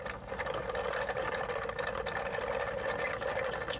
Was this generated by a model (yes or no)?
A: no